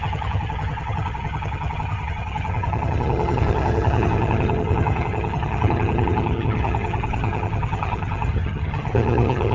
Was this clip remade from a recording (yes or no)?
yes